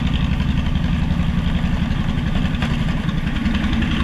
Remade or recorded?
recorded